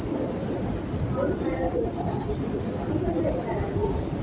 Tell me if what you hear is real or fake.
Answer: real